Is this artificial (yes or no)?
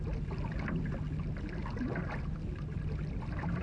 no